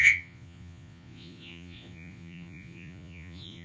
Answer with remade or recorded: remade